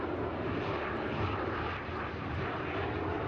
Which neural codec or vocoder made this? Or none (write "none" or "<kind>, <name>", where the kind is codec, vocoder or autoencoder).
none